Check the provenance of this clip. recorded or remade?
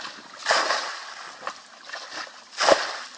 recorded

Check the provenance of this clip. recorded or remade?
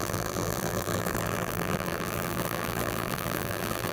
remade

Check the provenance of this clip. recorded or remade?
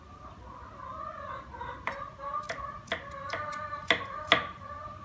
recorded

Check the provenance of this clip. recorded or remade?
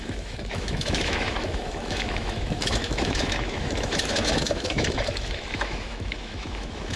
remade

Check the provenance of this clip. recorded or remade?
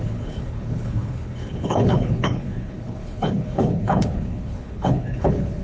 remade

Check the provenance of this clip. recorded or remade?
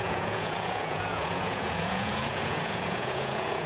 remade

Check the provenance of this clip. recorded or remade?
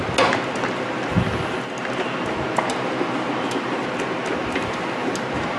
recorded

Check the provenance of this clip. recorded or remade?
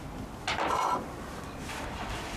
recorded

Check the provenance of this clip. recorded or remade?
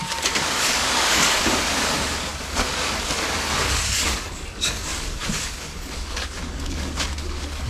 remade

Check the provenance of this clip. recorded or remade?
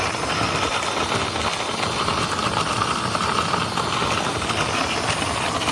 recorded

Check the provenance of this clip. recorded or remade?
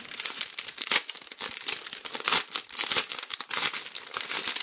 recorded